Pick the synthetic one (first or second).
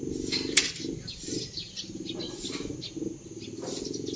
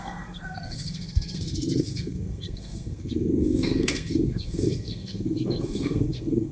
second